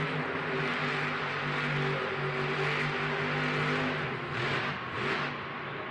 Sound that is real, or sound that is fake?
real